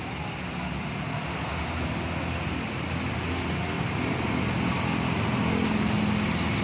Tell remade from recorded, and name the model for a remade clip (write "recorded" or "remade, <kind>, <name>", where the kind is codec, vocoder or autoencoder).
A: recorded